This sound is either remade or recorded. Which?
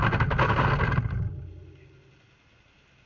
recorded